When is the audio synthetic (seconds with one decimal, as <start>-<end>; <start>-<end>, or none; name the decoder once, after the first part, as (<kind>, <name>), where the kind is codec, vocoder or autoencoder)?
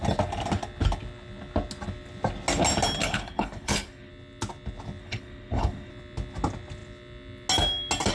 3.0-4.1 (codec, HILCodec); 5.0-5.9